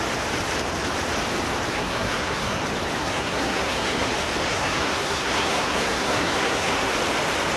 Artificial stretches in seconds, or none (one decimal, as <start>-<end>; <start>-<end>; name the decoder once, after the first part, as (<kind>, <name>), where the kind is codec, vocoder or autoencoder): 1.7-2.6 (codec, SNAC); 3.0-4.1; 4.5-6.9